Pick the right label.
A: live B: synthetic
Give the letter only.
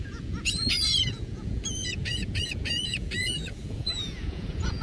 B